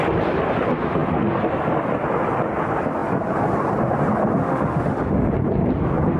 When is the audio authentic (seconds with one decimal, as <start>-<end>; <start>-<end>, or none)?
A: 0.0-4.4; 5.3-6.2